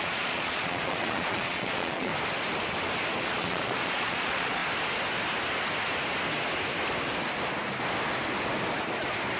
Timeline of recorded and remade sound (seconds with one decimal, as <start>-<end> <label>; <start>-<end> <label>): 0.0-2.1 remade; 2.1-3.2 recorded; 3.2-4.6 remade; 4.6-9.4 recorded